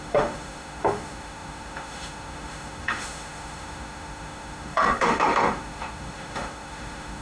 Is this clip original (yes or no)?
no